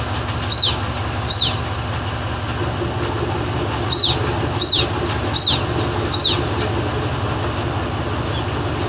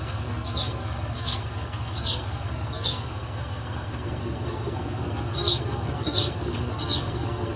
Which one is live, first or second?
first